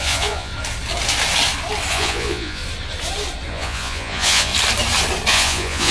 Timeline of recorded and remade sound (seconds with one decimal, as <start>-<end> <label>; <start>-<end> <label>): 0.0-0.5 remade; 0.5-1.9 recorded; 1.9-2.6 remade; 2.6-3.5 recorded; 3.5-4.5 remade; 4.5-5.3 recorded; 5.3-5.9 remade